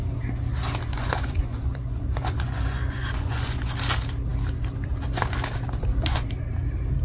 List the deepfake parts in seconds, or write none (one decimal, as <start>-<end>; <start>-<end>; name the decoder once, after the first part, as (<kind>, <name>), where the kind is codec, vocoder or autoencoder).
0.9-3.7 (vocoder, Vocos)